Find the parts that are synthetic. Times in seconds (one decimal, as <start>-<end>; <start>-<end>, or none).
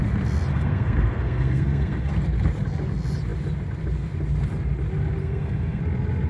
0.5-2.1; 5.2-5.8